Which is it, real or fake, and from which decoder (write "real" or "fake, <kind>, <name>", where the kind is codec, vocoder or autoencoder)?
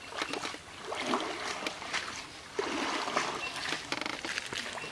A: real